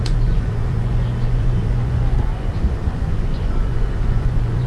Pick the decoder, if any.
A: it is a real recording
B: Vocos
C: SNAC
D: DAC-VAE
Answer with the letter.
B